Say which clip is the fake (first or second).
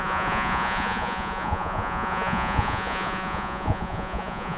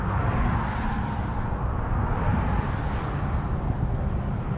first